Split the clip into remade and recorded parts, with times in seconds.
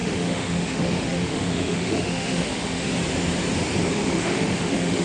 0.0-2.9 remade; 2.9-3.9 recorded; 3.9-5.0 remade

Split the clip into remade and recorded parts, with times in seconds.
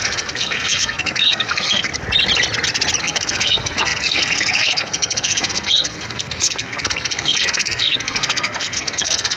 0.0-1.9 remade; 1.9-3.0 recorded; 3.0-9.4 remade